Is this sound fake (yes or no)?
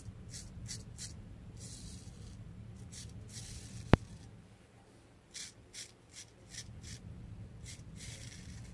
yes